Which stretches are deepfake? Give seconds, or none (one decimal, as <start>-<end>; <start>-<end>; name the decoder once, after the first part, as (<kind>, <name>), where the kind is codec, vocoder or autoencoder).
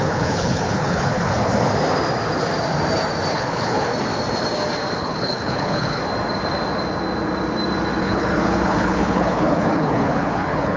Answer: 0.0-1.5 (codec, HILCodec); 3.3-3.9; 5.0-6.0; 8.0-10.8